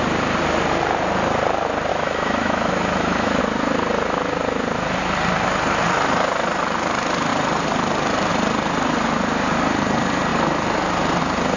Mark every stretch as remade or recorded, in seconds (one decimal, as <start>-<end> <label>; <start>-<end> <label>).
0.0-1.9 recorded; 1.9-3.4 remade; 3.4-11.6 recorded

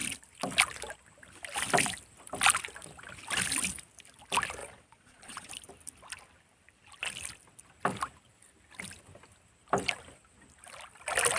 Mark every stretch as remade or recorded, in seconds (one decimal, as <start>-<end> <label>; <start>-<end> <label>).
0.0-4.6 recorded; 4.6-5.5 remade; 5.5-11.4 recorded

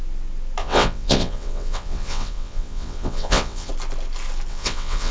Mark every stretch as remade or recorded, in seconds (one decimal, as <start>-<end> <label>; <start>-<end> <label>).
0.0-0.6 recorded; 0.6-3.7 remade; 3.7-4.5 recorded; 4.5-5.1 remade

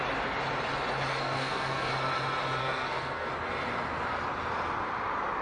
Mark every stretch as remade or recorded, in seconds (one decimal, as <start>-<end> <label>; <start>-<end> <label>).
0.0-1.1 recorded; 1.1-1.9 remade; 1.9-2.6 recorded; 2.6-3.3 remade; 3.3-5.4 recorded